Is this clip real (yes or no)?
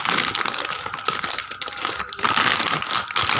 yes